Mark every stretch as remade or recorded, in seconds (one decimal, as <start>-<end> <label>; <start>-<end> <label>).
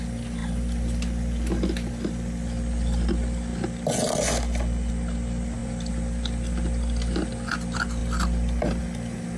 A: 0.0-9.4 recorded